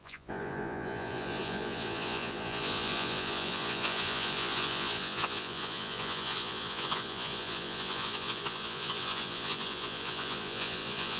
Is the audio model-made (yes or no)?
yes